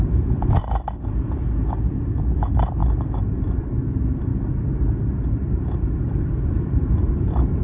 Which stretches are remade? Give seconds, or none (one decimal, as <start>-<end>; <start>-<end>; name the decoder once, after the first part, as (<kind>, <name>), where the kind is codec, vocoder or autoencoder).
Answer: 0.0-0.6 (vocoder, BigVGAN v2); 1.6-4.3; 5.5-7.6